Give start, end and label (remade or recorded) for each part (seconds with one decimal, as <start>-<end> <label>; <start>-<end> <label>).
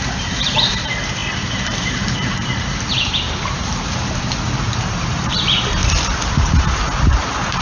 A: 0.0-5.8 remade; 5.8-7.1 recorded; 7.1-7.6 remade